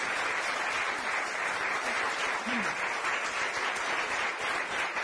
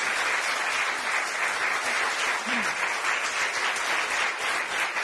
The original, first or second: second